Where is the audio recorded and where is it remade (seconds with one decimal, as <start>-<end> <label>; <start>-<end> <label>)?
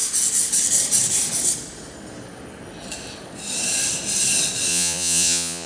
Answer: 0.0-4.7 recorded; 4.7-5.7 remade